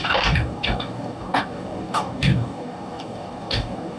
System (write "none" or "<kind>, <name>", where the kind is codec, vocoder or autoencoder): codec, DAC